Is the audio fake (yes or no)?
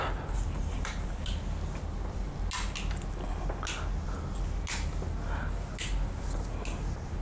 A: no